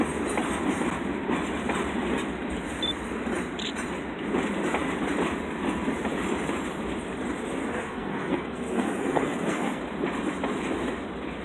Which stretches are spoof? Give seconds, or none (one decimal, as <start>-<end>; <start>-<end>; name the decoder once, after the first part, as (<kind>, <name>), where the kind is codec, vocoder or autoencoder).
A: 7.6-9.8 (codec, SNAC)